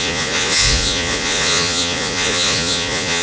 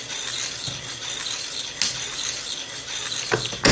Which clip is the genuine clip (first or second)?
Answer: second